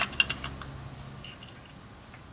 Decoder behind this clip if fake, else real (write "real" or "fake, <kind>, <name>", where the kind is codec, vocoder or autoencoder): real